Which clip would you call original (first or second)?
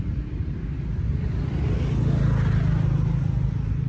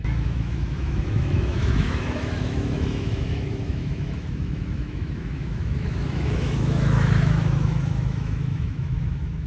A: first